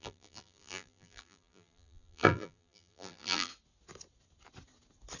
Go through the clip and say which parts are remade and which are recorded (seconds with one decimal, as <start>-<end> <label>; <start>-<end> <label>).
0.0-3.5 remade; 3.5-5.2 recorded